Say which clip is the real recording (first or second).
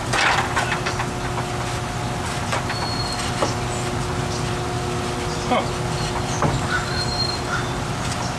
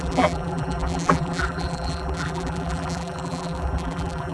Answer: first